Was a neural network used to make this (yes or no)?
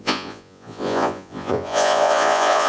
yes